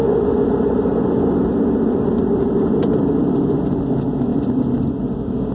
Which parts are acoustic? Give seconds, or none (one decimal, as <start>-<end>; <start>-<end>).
0.0-5.5